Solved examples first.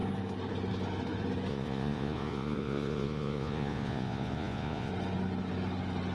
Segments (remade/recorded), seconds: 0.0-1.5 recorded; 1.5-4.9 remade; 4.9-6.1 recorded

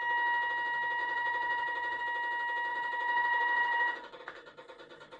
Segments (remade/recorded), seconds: 0.0-1.0 recorded; 1.0-2.0 remade; 2.0-2.7 recorded; 2.7-4.2 remade; 4.2-5.2 recorded

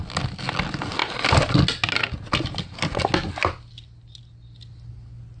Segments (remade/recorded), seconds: 0.0-5.4 recorded

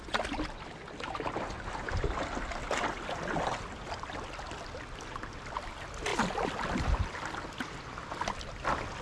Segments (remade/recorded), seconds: 0.0-9.0 recorded

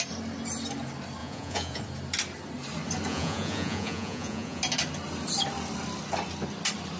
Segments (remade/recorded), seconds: 0.0-1.2 recorded; 1.2-1.8 remade; 1.8-3.1 recorded; 3.1-4.6 remade; 4.6-7.0 recorded